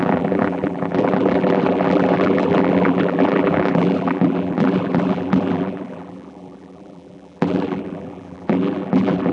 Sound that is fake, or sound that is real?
fake